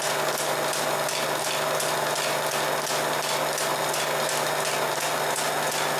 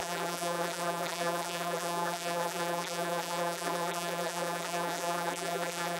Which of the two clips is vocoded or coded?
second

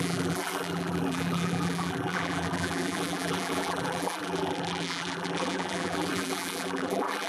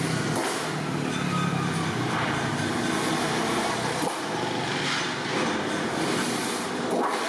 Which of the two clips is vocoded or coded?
first